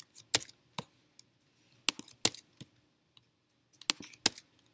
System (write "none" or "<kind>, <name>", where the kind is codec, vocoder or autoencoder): none